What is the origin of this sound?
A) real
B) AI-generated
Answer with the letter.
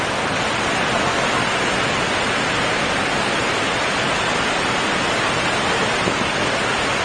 A